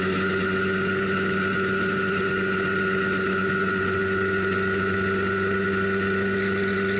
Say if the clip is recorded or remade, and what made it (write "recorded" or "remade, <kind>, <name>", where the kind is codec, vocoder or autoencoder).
recorded